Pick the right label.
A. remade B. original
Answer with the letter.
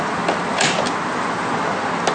B